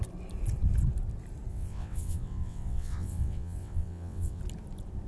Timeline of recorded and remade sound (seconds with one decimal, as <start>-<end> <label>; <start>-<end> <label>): 0.0-1.5 recorded; 1.5-4.4 remade; 4.4-5.1 recorded